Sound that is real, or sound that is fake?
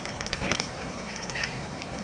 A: fake